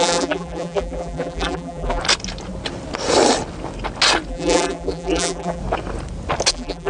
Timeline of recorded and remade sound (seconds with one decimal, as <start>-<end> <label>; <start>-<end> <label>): 0.0-2.0 remade; 2.0-4.3 recorded; 4.3-5.6 remade; 5.6-6.5 recorded; 6.5-6.9 remade